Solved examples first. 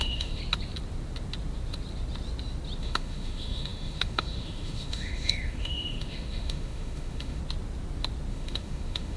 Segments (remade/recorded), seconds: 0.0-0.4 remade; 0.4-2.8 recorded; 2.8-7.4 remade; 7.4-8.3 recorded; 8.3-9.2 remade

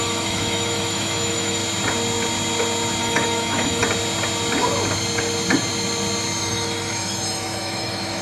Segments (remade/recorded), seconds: 0.0-1.6 remade; 1.6-3.0 recorded; 3.0-3.8 remade; 3.8-6.5 recorded; 6.5-8.2 remade

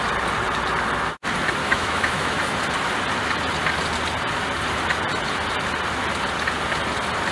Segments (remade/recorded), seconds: 0.0-1.6 recorded; 1.6-2.4 remade; 2.4-7.3 recorded

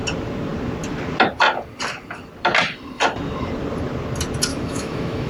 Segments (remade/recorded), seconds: 0.0-4.5 recorded; 4.5-5.3 remade

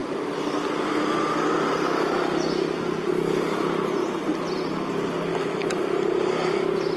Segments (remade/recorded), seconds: 0.0-7.0 recorded

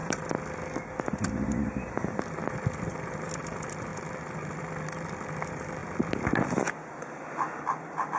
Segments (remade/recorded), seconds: 0.0-8.2 recorded